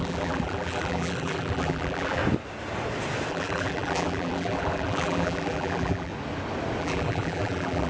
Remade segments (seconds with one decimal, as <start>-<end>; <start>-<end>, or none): 0.0-2.2; 3.3-6.1; 6.8-7.9